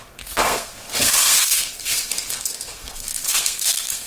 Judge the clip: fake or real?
fake